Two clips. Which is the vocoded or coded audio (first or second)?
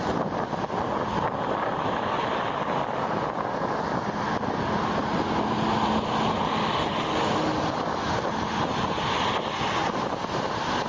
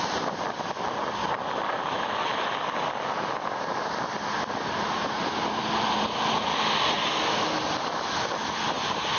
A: second